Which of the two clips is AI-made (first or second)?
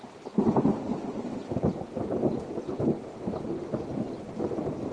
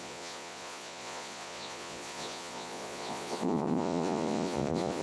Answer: second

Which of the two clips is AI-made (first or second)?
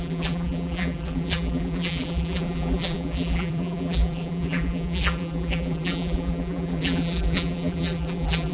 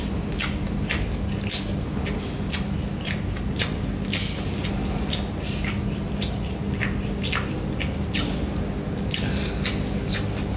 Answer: first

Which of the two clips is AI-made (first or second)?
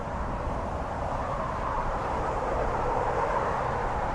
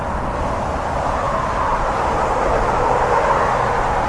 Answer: first